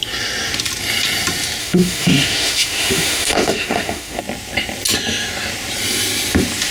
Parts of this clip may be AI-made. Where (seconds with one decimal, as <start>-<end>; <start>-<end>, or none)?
1.6-4.2